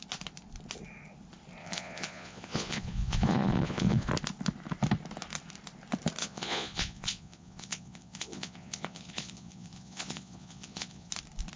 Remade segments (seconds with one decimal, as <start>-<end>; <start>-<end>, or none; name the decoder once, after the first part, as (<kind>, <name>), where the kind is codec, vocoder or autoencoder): 1.6-4.1 (vocoder, Vocos); 6.2-11.1